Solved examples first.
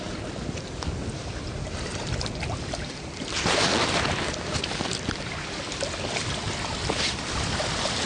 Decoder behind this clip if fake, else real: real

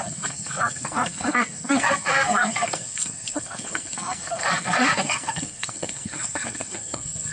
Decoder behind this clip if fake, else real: fake, codec, SNAC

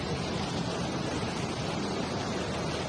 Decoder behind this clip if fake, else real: real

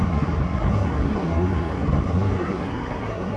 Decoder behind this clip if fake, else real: fake, codec, SNAC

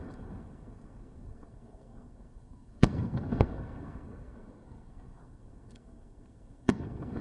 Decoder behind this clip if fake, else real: fake, codec, SNAC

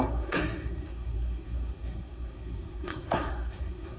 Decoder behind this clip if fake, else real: fake, codec, SNAC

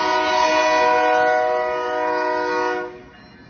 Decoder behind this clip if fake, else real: real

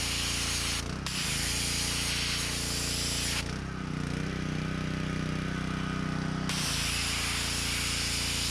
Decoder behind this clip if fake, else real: real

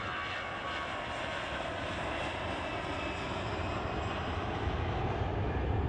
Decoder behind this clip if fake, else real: real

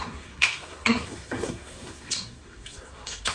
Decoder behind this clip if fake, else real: fake, codec, SNAC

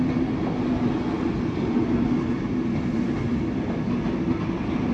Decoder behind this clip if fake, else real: real